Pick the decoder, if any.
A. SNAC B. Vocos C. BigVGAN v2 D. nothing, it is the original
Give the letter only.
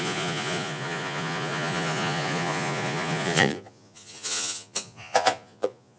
B